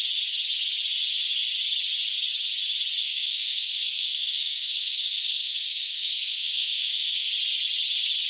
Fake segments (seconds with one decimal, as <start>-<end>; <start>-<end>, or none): 3.0-7.3